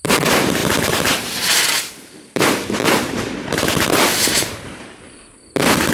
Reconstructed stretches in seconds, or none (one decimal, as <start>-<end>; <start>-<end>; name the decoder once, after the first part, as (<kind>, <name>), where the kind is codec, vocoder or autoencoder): 0.6-3.2 (vocoder, BigVGAN v2); 4.1-5.0